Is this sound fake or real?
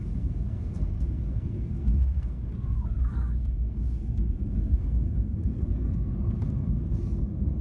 fake